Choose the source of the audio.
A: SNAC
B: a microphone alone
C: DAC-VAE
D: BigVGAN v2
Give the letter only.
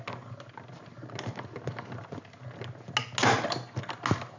B